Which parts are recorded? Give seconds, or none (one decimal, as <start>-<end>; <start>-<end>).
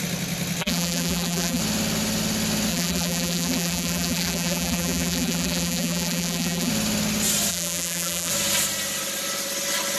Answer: 0.0-0.6; 1.6-2.7; 6.7-7.5; 8.3-10.0